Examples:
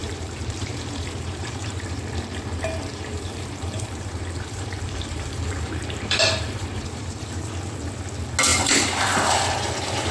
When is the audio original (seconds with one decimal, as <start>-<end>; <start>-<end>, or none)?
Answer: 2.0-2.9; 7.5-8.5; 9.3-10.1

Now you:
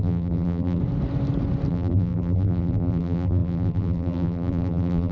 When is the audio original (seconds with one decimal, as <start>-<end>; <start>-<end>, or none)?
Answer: 0.8-1.7

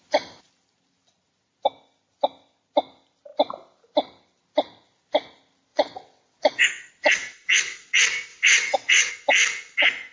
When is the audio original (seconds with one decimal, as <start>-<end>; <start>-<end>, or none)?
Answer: 0.0-5.7; 6.9-8.3; 9.1-10.1

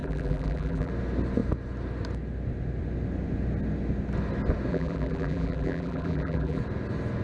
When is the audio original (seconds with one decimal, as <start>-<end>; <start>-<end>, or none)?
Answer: 0.9-4.7; 6.6-7.2